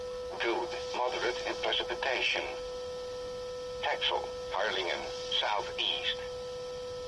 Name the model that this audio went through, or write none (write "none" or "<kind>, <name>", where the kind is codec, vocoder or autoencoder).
none